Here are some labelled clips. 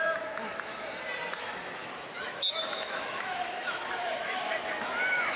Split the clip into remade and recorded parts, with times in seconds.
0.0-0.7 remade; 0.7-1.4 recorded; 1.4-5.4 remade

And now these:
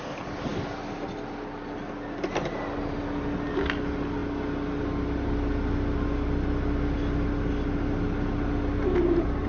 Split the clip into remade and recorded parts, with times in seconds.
0.0-9.5 recorded

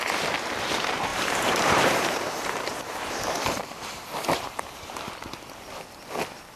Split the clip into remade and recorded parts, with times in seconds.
0.0-1.1 recorded; 1.1-5.1 remade; 5.1-6.6 recorded

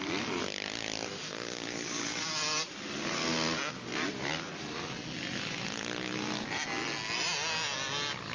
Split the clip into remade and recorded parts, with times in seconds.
0.0-8.3 recorded

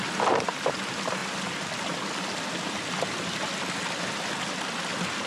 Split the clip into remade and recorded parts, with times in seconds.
0.0-5.3 recorded

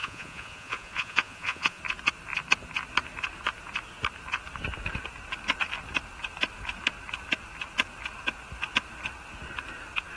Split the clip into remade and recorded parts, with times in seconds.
0.0-1.8 remade; 1.8-10.2 recorded